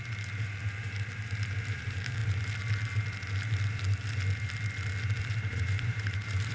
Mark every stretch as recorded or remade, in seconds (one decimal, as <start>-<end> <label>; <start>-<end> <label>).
0.0-2.2 remade; 2.2-5.2 recorded; 5.2-6.5 remade